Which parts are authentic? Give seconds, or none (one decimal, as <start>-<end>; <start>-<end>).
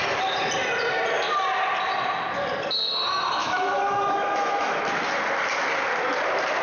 0.0-3.4; 4.8-6.6